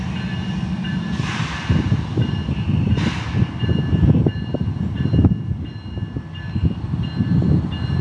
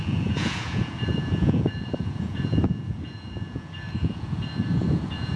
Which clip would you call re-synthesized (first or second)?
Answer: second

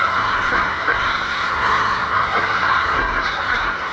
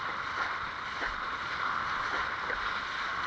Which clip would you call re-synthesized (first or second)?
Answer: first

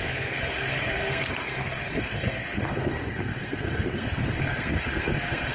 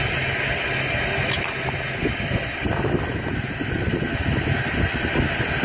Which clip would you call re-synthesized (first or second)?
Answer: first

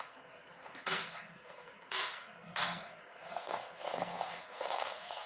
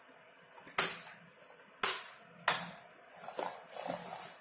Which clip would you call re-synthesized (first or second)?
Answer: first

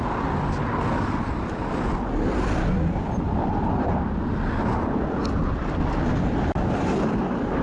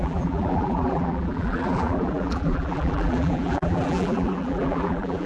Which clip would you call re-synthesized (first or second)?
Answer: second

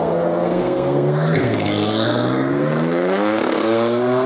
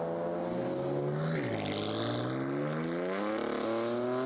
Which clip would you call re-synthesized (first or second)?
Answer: first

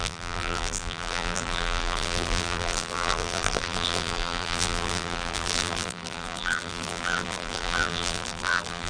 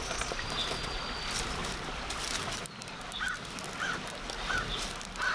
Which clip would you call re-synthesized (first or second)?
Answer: first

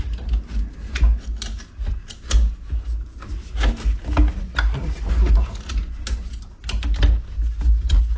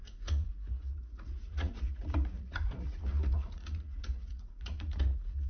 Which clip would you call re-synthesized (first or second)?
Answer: second